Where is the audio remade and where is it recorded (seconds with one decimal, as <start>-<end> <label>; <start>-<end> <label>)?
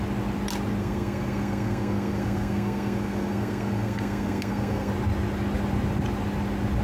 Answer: 0.0-0.8 recorded; 0.8-4.9 remade; 4.9-6.8 recorded